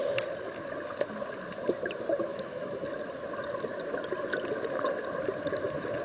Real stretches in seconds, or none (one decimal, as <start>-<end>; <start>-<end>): 0.0-2.3; 2.8-6.0